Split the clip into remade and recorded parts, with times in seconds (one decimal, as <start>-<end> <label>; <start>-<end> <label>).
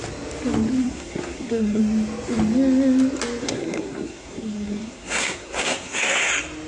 0.0-0.8 recorded; 0.8-1.8 remade; 1.8-3.4 recorded; 3.4-6.3 remade; 6.3-6.7 recorded